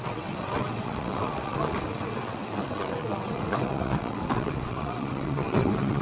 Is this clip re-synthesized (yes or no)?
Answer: yes